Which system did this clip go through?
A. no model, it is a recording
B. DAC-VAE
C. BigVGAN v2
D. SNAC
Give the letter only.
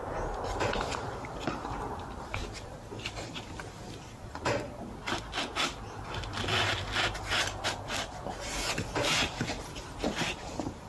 A